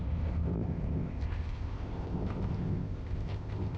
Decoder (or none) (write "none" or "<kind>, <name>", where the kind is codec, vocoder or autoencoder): codec, ZipCodec